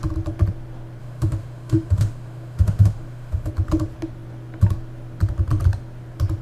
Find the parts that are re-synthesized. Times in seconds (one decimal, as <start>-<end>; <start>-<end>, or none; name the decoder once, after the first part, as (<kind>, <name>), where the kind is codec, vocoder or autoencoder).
1.0-3.5 (autoencoder, DAC-VAE)